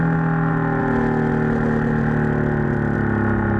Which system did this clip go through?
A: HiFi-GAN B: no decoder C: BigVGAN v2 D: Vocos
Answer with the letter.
B